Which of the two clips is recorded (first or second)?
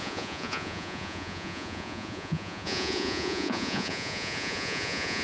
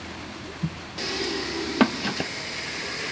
second